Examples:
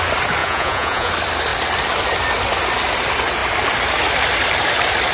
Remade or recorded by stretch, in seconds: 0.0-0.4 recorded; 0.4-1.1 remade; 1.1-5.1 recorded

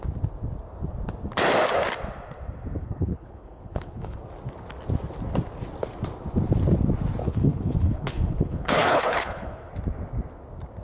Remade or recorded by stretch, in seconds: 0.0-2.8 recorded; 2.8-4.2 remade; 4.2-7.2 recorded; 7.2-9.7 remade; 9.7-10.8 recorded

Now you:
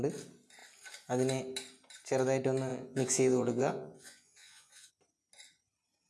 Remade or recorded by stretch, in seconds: 0.0-2.7 recorded; 2.7-4.9 remade; 4.9-6.1 recorded